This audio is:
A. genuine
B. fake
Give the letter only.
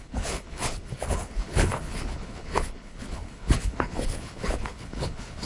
B